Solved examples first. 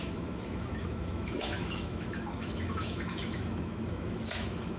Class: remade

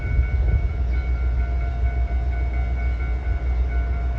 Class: recorded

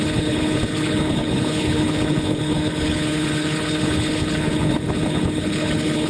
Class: remade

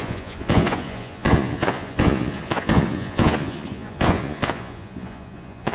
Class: remade